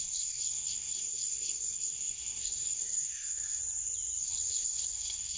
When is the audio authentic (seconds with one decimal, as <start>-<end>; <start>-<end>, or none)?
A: 3.6-4.2